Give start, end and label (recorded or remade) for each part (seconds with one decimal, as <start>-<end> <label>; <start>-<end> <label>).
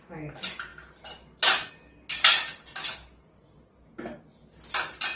0.0-5.2 recorded